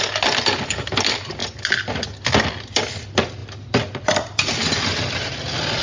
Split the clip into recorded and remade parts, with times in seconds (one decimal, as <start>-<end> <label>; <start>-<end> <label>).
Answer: 0.0-5.8 recorded